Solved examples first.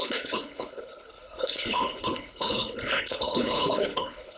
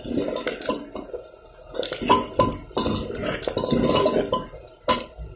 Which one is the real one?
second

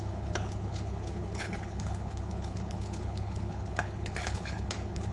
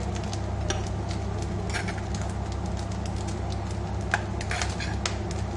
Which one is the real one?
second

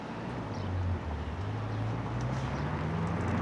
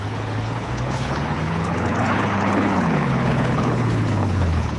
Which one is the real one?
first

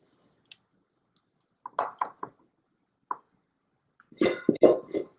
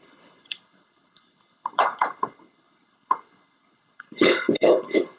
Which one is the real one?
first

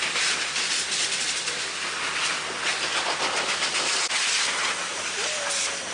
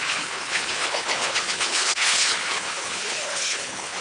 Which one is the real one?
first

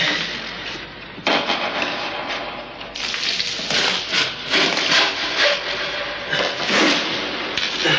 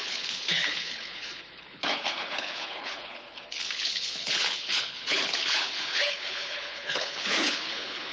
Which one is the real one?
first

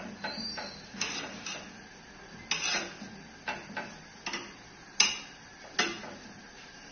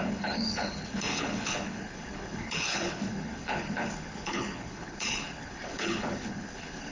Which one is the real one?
first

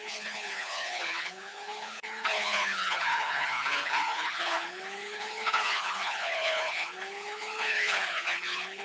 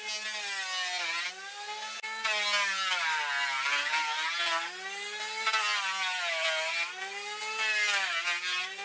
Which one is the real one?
second